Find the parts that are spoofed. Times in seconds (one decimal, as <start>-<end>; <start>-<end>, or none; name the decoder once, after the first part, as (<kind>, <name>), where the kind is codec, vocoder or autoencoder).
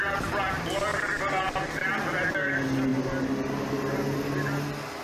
none